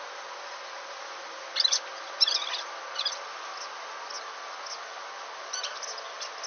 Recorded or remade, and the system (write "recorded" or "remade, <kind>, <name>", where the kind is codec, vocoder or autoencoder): recorded